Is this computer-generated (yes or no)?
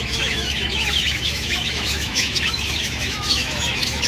yes